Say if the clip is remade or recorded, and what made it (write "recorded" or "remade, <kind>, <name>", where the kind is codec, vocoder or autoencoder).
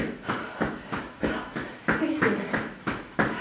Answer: remade, autoencoder, DAC-VAE